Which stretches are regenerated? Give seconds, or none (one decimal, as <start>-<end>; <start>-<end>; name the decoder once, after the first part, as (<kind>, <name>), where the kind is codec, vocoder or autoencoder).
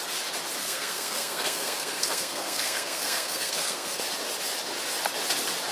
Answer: 0.6-4.0 (codec, SNAC)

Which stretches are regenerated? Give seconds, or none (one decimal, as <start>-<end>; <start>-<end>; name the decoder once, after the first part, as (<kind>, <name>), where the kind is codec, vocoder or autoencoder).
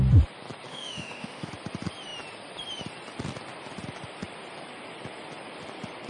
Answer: 0.7-1.5 (autoencoder, DAC-VAE)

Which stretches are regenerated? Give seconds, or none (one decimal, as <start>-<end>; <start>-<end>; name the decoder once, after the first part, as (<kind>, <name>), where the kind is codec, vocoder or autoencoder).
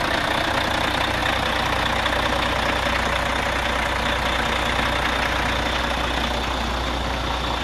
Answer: none